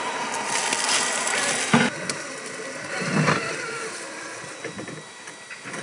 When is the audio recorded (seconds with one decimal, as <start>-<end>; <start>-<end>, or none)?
0.0-5.8